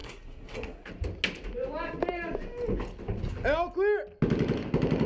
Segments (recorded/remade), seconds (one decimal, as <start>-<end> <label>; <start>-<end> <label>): 0.0-0.9 remade; 0.9-5.1 recorded